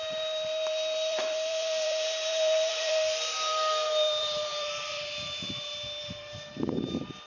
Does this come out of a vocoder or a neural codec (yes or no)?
yes